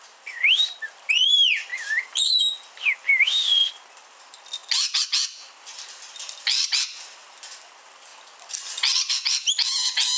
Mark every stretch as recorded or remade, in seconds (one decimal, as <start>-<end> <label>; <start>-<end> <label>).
0.0-10.2 recorded